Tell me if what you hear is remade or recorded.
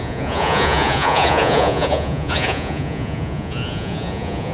remade